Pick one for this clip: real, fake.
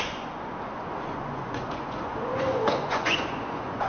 fake